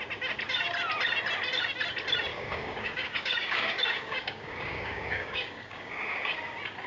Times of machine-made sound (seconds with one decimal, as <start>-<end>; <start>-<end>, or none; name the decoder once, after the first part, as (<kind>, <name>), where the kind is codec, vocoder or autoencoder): 2.3-6.4 (codec, DAC)